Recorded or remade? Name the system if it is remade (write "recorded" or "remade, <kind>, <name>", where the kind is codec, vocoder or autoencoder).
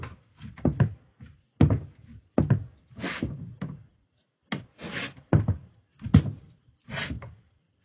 recorded